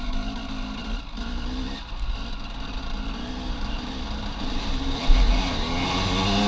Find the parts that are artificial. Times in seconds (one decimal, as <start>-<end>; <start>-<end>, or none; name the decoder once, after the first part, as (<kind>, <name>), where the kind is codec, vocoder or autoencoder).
none